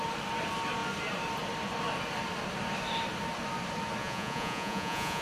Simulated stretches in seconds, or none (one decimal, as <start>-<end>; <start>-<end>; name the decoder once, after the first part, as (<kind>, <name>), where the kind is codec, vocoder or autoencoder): 4.0-5.2 (vocoder, Vocos)